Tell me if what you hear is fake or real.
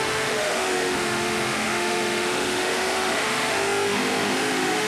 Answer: fake